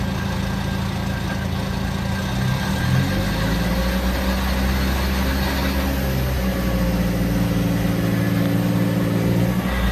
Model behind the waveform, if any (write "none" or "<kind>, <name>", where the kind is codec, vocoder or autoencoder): none